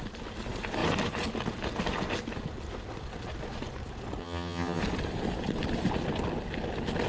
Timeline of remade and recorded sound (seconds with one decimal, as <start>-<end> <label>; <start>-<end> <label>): 0.0-4.2 recorded; 4.2-4.8 remade; 4.8-7.1 recorded